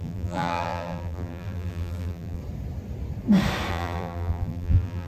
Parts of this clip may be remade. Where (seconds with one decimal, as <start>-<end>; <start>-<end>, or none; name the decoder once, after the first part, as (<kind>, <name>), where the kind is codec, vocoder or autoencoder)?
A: 0.0-2.4 (vocoder, BigVGAN v2); 3.7-5.1